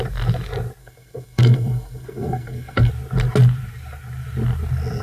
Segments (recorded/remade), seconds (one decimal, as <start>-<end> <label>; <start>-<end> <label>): 0.0-0.8 recorded; 0.8-2.9 remade; 2.9-5.0 recorded